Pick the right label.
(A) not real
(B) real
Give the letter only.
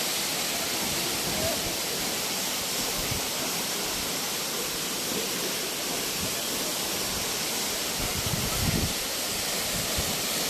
B